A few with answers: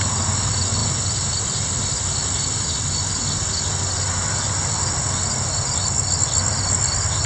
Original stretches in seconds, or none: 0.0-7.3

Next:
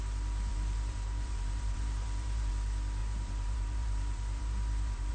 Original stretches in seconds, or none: 0.0-0.5; 2.5-3.0